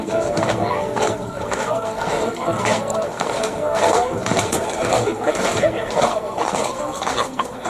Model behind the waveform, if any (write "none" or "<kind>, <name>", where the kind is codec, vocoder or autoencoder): codec, SNAC